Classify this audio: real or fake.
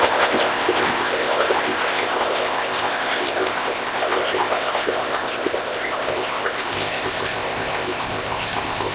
fake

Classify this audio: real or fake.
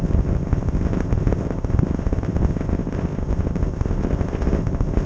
fake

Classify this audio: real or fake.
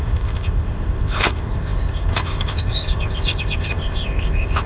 fake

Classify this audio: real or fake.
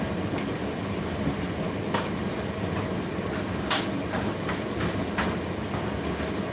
real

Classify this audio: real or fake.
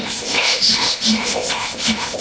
fake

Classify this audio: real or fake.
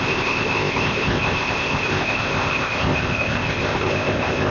fake